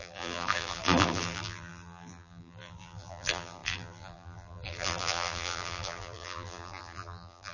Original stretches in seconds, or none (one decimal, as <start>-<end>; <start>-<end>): none

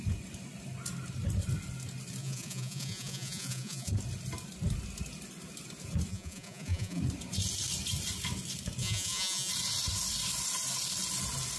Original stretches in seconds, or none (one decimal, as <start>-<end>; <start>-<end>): 0.0-2.2; 3.9-6.1; 7.0-8.8; 9.5-11.6

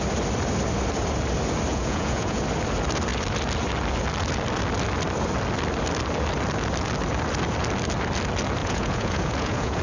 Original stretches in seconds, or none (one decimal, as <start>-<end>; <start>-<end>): 0.0-1.7; 2.4-8.6

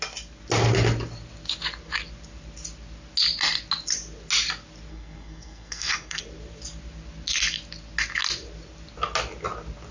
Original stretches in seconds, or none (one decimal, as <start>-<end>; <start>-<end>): 0.0-4.9; 6.2-9.9

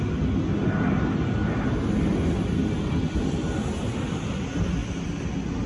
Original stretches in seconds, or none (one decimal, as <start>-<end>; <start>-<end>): 0.0-5.7

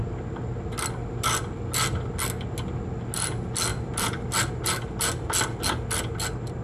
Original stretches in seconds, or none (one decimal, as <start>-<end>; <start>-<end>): 0.0-6.6

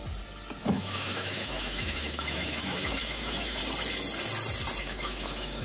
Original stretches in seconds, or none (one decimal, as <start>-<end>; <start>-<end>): 0.0-0.6; 3.6-4.8